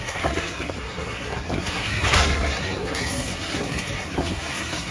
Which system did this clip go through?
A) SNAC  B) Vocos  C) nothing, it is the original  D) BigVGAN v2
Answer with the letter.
A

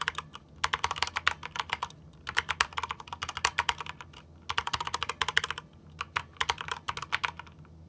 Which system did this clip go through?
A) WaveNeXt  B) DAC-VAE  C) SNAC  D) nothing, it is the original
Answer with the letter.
D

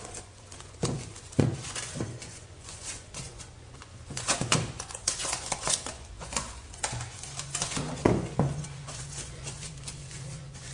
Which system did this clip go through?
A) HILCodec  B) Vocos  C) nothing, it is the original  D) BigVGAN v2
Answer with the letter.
B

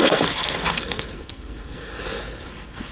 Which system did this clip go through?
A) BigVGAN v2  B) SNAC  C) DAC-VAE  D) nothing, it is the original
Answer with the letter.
B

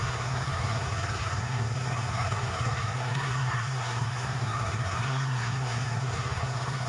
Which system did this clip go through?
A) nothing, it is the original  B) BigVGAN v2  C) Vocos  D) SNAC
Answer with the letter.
D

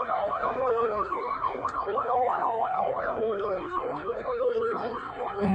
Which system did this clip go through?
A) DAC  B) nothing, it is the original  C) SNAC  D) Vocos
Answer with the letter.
C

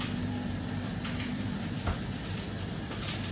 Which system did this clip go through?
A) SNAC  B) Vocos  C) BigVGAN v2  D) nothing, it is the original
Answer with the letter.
C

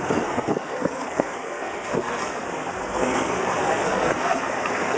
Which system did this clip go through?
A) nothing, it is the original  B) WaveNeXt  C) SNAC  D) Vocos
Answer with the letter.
C